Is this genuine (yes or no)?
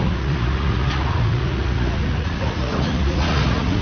no